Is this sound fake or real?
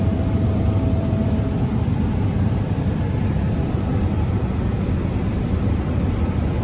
fake